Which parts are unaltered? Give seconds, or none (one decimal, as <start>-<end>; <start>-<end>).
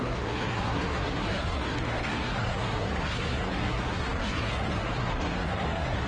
none